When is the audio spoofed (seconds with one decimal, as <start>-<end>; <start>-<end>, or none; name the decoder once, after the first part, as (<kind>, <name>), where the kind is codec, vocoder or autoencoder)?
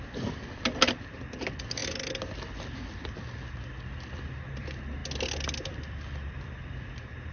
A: none